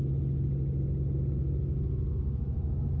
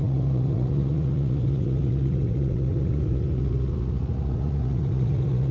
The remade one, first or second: second